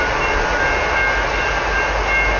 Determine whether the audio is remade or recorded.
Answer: recorded